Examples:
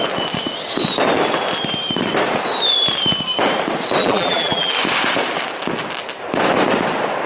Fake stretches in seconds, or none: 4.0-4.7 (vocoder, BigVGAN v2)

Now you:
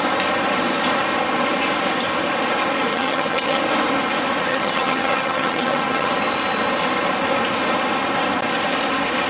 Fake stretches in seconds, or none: 2.9-3.6 (vocoder, HiFi-GAN); 4.5-6.1